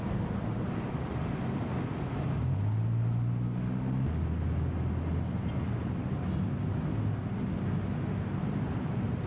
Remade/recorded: recorded